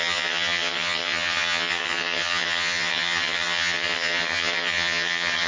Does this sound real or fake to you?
fake